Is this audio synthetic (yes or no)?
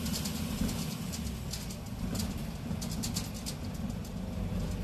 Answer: no